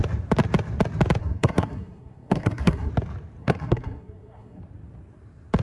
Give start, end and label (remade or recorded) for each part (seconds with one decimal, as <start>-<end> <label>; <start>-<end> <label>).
0.0-1.2 recorded; 1.2-2.9 remade; 2.9-3.4 recorded; 3.4-4.6 remade; 4.6-5.6 recorded